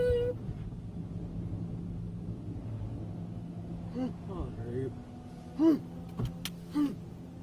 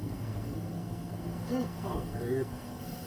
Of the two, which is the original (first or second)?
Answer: first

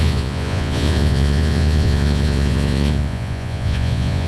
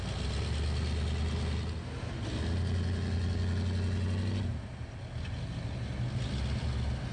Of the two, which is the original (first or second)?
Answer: second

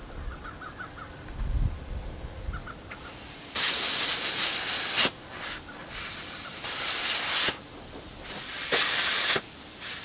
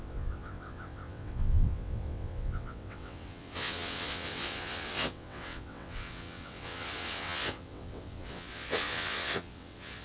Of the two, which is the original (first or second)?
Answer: first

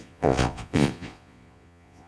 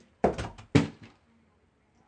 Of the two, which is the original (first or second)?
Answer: second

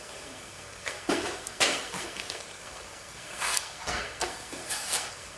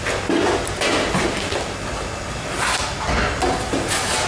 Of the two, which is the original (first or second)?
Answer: second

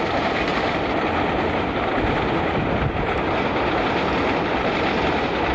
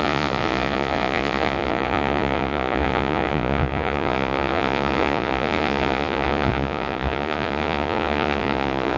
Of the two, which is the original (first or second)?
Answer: first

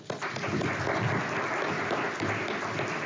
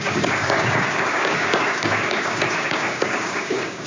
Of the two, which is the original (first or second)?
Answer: first